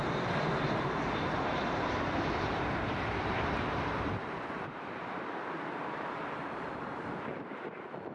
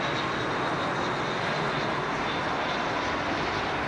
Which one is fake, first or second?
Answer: first